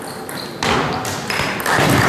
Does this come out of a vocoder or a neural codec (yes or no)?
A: no